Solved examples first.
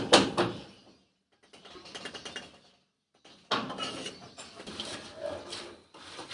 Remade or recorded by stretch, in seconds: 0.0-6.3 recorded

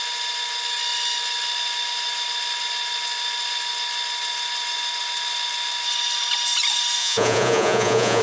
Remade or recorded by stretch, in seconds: 0.0-7.0 recorded; 7.0-8.2 remade

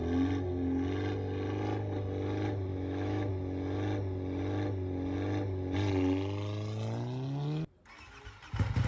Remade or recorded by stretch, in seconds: 0.0-2.7 recorded; 2.7-3.3 remade; 3.3-8.9 recorded

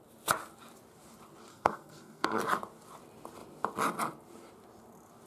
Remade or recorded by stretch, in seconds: 0.0-1.5 recorded; 1.5-2.4 remade; 2.4-5.3 recorded

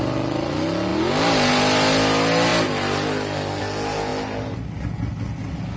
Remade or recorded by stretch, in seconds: 0.0-5.8 recorded

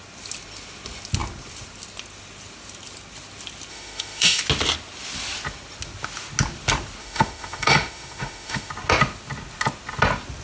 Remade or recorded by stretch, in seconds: 0.0-3.7 recorded; 3.7-4.4 remade; 4.4-7.0 recorded; 7.0-8.7 remade; 8.7-10.4 recorded

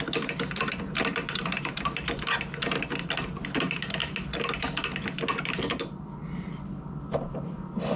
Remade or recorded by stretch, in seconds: 0.0-8.0 recorded

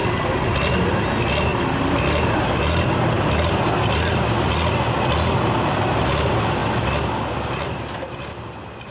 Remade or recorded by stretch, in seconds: 0.0-8.9 recorded